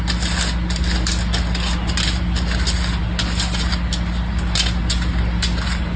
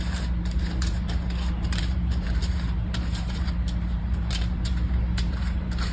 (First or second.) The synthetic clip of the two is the second